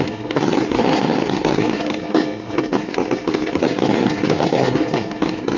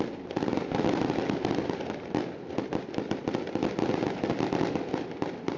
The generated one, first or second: first